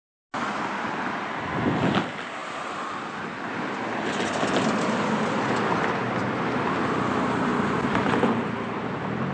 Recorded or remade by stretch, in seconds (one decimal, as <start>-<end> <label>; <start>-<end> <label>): 0.0-9.3 recorded